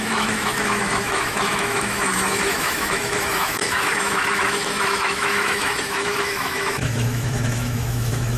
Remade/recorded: remade